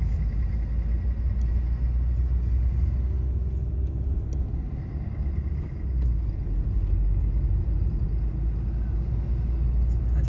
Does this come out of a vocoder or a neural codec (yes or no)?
no